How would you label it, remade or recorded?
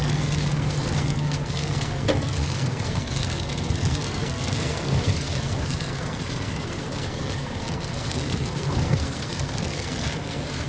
remade